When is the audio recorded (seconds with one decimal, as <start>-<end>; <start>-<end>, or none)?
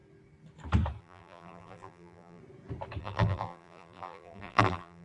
0.0-1.0; 2.4-3.0